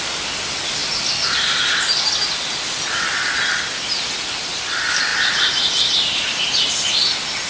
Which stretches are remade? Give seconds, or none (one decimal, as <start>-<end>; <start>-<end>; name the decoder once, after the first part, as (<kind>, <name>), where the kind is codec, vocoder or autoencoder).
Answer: none